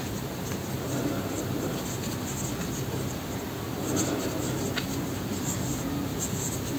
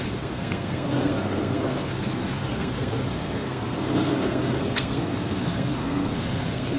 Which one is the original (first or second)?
first